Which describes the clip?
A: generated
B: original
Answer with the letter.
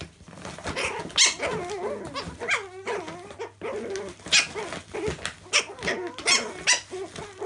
B